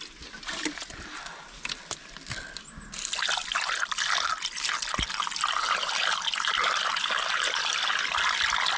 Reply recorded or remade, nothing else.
recorded